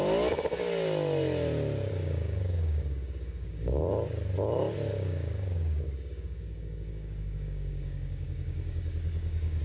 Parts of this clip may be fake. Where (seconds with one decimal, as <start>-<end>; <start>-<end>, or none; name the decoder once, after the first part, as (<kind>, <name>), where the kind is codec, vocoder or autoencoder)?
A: 1.9-3.8 (codec, DAC); 4.9-9.6